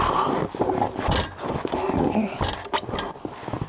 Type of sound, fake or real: real